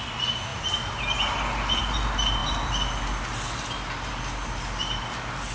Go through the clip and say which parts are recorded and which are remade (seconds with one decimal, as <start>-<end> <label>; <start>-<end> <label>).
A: 0.0-5.5 recorded

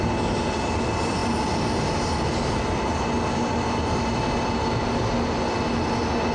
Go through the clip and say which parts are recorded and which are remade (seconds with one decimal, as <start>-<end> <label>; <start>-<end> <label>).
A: 0.0-6.3 recorded

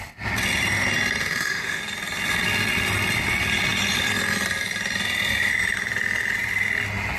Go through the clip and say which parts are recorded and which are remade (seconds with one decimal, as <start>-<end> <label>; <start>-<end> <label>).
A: 0.0-1.2 recorded; 1.2-1.8 remade; 1.8-7.2 recorded

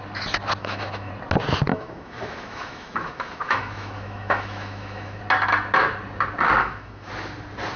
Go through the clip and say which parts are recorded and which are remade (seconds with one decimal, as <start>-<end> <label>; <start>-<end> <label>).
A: 0.0-0.6 recorded; 0.6-1.1 remade; 1.1-1.7 recorded; 1.7-5.2 remade; 5.2-6.6 recorded; 6.6-7.1 remade; 7.1-7.8 recorded